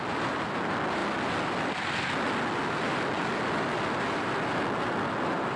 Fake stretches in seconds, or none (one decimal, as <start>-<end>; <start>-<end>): none